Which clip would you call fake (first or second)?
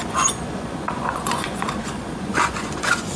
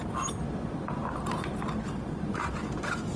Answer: first